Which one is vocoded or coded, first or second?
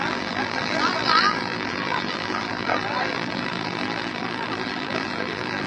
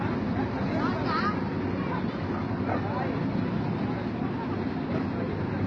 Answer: first